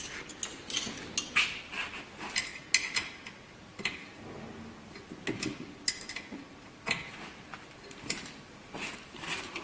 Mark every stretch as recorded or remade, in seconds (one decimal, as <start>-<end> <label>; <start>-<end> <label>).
0.0-9.6 recorded